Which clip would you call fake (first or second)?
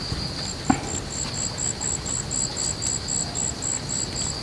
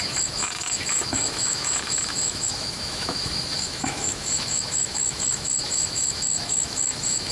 second